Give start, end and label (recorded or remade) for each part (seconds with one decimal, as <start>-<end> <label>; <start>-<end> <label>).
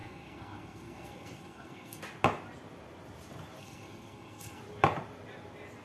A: 0.0-2.0 remade; 2.0-3.6 recorded; 3.6-4.6 remade; 4.6-5.8 recorded